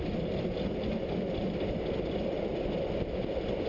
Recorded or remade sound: recorded